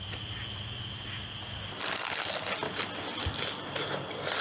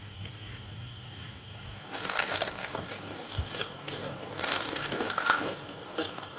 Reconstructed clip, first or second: second